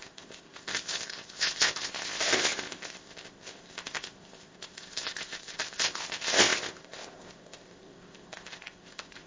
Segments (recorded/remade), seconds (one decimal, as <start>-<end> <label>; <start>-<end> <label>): 0.0-9.3 remade

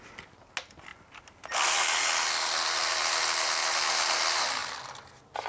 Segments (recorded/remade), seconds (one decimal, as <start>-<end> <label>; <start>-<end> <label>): 0.0-5.5 recorded

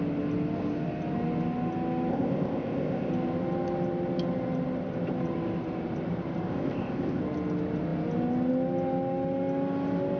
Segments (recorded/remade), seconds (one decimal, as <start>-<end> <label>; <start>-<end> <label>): 0.0-2.1 recorded; 2.1-3.1 remade; 3.1-6.5 recorded; 6.5-7.2 remade; 7.2-10.2 recorded